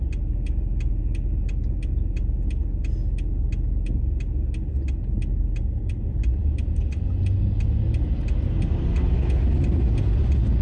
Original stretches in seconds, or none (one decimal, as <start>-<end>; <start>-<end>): 0.0-10.6